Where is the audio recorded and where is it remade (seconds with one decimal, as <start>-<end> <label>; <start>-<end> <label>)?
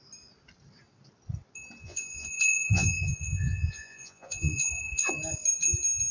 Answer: 0.0-1.8 recorded; 1.8-5.1 remade; 5.1-6.1 recorded